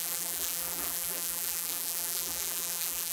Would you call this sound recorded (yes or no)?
no